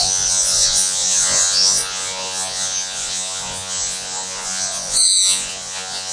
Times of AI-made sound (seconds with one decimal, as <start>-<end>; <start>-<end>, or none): 0.0-6.1